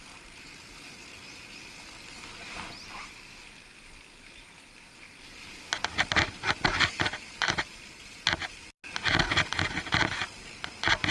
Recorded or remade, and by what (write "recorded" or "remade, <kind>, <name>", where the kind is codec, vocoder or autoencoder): recorded